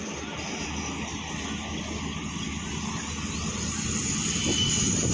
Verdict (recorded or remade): recorded